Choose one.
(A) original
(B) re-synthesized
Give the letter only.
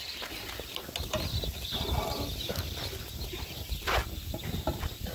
A